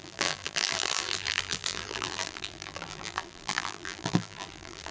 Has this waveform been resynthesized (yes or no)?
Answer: yes